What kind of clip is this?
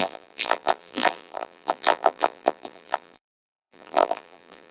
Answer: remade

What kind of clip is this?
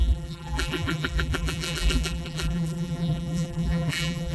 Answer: remade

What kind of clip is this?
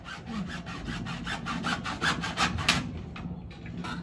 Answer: recorded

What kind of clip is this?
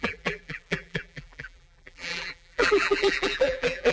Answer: remade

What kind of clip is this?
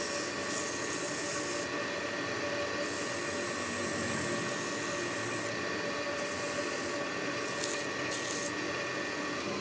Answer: recorded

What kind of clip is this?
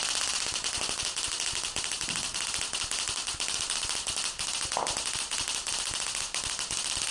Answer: remade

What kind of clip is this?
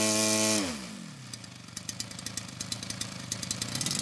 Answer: recorded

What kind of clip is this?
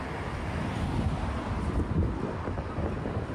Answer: remade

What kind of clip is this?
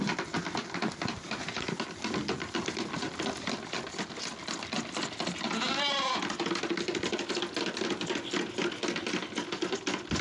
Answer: recorded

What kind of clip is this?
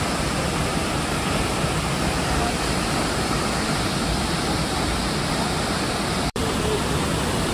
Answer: remade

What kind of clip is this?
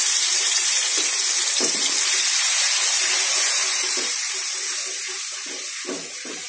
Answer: remade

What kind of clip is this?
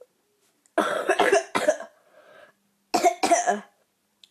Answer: recorded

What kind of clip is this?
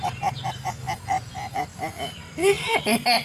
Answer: recorded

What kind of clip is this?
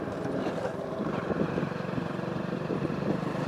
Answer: remade